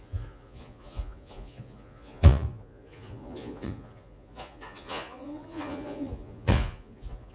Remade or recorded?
remade